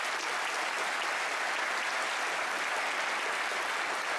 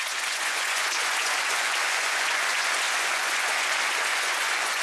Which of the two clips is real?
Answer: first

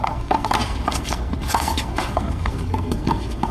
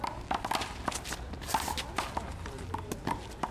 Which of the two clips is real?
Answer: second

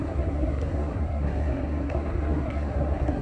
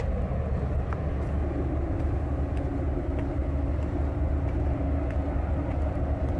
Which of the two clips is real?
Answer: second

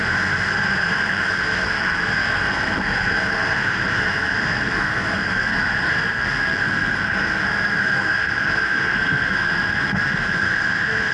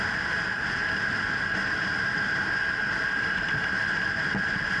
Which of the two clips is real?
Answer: second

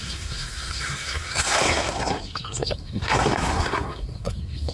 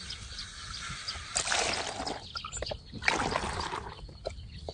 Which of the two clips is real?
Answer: second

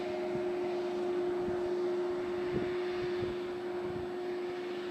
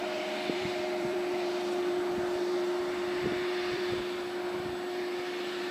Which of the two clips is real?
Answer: first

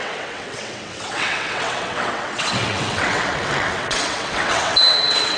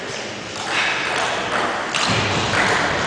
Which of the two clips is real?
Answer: second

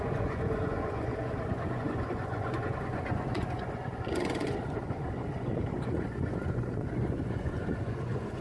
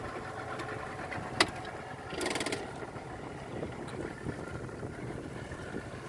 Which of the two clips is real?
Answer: second